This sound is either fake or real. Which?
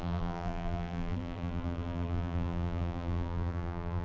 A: fake